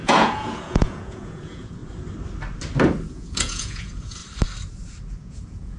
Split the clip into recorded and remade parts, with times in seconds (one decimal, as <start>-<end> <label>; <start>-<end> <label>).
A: 0.0-1.8 remade; 1.8-3.1 recorded; 3.1-4.2 remade; 4.2-5.2 recorded; 5.2-5.8 remade